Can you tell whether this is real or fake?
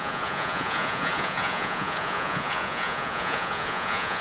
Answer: fake